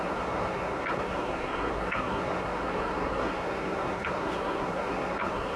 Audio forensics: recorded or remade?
remade